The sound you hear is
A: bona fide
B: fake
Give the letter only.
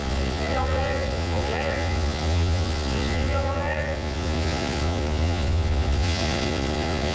B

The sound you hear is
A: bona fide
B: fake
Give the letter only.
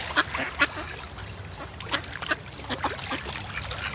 A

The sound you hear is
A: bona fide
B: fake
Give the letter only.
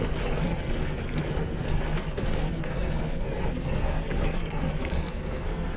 B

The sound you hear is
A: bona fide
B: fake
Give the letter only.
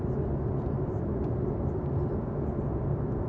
A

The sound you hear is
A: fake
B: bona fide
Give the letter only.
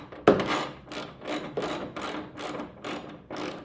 B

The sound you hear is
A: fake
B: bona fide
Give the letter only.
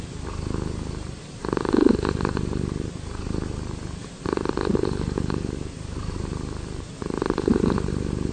A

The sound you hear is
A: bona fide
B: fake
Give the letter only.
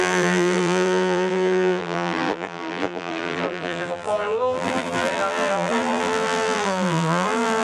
B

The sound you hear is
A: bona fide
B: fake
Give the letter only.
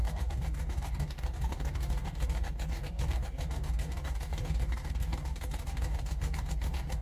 B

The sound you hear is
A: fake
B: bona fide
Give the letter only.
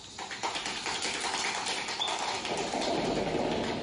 B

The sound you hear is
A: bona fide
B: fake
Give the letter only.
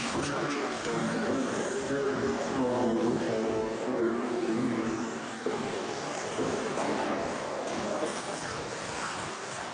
B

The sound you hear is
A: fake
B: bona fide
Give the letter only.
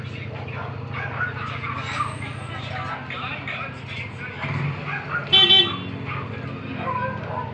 B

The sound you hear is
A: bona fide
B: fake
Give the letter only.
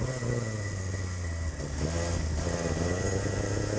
A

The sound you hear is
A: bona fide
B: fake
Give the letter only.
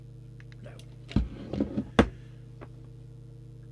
A